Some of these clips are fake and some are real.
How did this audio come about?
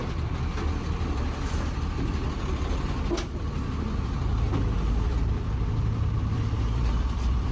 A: fake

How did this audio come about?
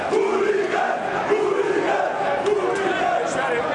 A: real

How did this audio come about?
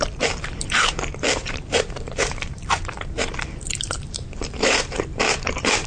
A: fake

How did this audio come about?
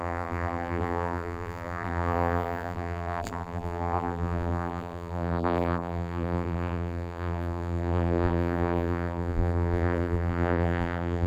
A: fake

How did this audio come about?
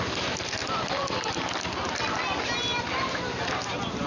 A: real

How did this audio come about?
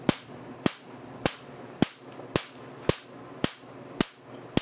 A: real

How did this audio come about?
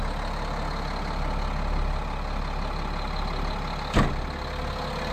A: real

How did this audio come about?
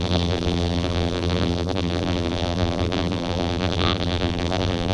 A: fake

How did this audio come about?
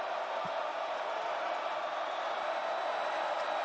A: real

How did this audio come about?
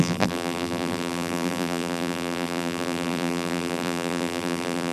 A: fake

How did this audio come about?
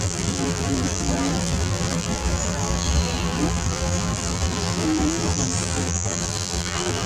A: fake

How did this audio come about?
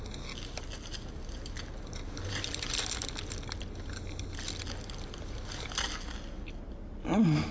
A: real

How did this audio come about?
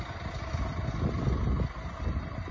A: real